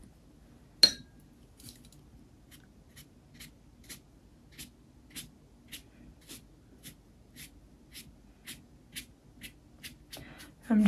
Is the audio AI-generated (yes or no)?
no